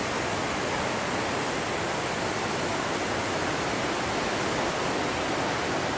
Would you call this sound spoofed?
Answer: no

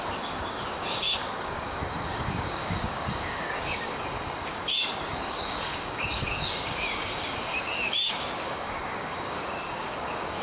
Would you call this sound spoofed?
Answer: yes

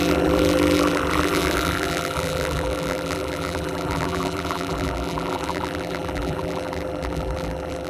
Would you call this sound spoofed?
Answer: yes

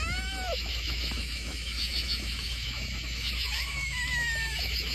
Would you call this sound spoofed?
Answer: yes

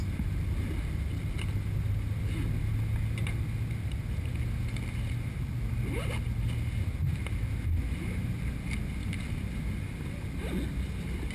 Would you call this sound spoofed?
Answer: no